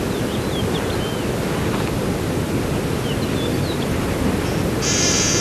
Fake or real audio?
real